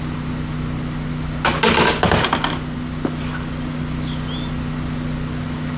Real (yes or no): yes